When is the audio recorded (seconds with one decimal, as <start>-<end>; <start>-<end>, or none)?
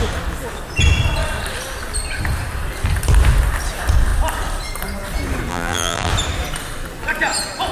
0.0-5.5; 6.1-7.7